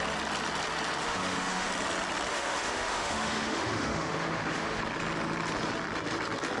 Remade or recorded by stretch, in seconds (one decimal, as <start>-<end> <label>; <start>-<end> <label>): 0.0-1.0 recorded; 1.0-1.7 remade; 1.7-2.3 recorded; 2.3-4.8 remade; 4.8-6.6 recorded